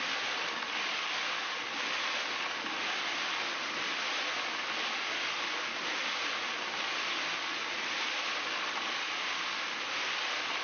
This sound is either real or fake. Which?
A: real